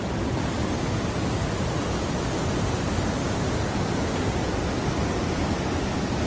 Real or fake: real